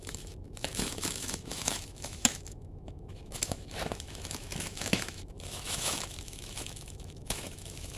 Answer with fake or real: fake